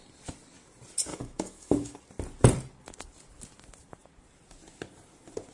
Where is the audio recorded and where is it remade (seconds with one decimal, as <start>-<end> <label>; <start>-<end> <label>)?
0.0-1.1 recorded; 1.1-2.0 remade; 2.0-5.5 recorded